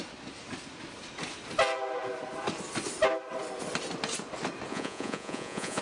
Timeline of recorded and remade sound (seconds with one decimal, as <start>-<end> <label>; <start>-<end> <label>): 0.0-4.7 recorded; 4.7-5.8 remade